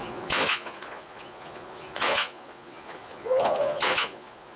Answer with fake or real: fake